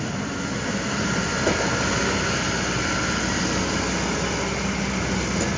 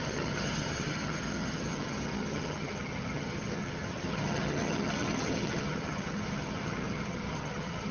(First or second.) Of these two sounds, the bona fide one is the first